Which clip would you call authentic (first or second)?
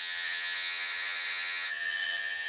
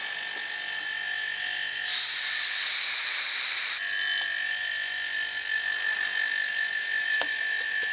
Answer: second